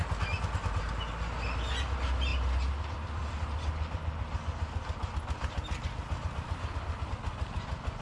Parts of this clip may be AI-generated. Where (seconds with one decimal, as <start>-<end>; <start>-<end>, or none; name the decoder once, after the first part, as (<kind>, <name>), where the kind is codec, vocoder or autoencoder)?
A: none

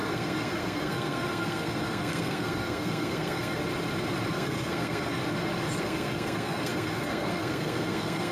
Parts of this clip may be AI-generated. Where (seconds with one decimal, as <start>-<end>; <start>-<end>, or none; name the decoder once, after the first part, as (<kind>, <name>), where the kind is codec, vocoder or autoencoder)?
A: 0.0-3.6 (codec, SNAC); 4.3-5.2; 5.8-8.3

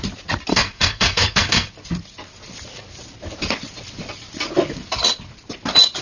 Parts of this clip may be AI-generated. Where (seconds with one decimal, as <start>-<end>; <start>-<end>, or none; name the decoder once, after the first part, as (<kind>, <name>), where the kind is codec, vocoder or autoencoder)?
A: 0.5-1.7 (codec, SNAC)

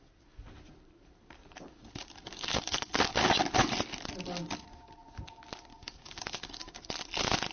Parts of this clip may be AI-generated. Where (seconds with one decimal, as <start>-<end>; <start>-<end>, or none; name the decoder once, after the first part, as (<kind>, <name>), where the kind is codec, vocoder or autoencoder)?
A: 2.2-3.4 (codec, DAC); 5.7-6.8

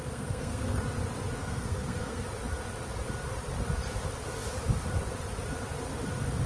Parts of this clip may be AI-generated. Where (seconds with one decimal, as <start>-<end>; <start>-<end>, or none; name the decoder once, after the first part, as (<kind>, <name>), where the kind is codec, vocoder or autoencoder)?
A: 0.0-0.8 (codec, SNAC); 1.4-2.2